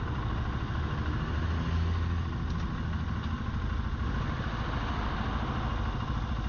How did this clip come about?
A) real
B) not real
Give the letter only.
A